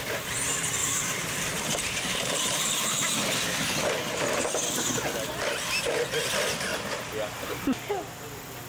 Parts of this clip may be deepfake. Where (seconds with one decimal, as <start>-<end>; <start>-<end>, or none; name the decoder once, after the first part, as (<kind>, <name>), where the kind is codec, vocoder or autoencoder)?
0.8-2.9 (vocoder, BigVGAN v2)